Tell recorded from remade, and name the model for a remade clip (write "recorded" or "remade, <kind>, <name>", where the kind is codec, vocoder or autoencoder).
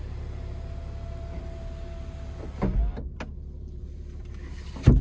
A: recorded